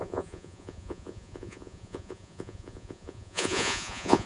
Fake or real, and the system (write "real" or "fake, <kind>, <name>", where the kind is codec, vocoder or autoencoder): fake, vocoder, Vocos